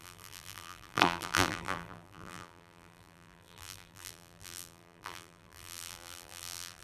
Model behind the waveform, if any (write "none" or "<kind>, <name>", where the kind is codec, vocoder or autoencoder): vocoder, BigVGAN v2